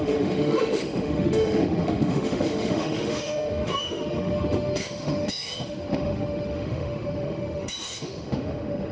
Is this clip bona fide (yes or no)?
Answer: no